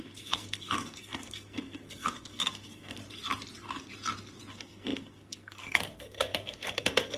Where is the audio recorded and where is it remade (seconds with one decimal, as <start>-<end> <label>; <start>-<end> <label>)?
0.0-3.0 remade; 3.0-4.5 recorded; 4.5-7.2 remade